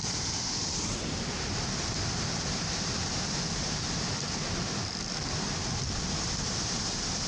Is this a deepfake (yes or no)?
no